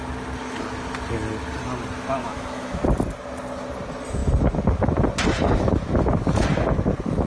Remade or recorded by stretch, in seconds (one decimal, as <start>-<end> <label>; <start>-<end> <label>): 0.0-2.2 recorded; 2.2-2.8 remade; 2.8-7.3 recorded